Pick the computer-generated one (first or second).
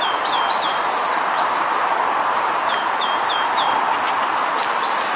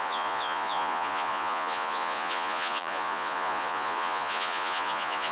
second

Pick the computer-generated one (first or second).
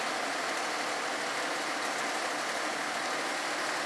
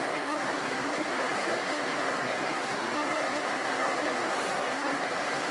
second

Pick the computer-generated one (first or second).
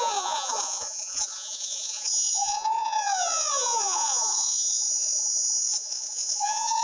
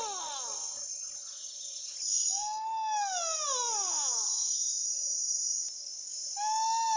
first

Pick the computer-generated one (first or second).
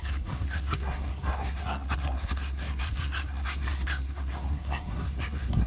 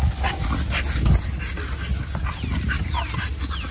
first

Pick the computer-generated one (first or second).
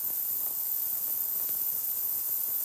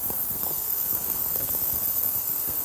second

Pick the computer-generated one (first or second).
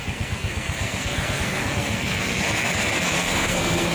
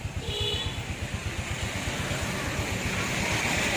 first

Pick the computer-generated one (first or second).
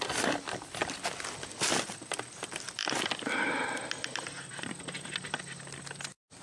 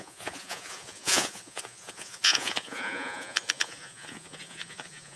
second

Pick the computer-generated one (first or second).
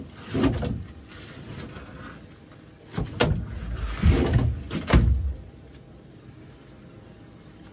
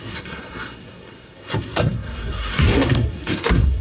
second